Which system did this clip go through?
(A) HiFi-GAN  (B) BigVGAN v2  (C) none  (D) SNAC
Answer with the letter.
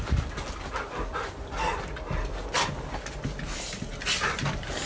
C